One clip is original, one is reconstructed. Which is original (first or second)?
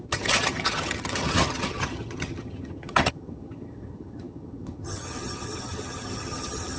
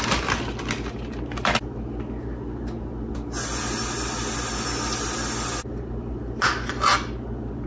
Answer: second